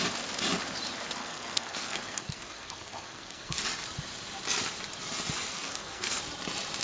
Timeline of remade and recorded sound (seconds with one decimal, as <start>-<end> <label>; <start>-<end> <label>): 0.0-1.2 recorded; 1.2-3.6 remade; 3.6-5.5 recorded; 5.5-6.2 remade; 6.2-6.8 recorded